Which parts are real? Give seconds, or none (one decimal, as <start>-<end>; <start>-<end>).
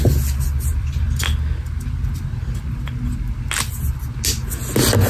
0.0-0.7; 1.2-5.1